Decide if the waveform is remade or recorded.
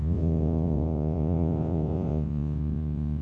remade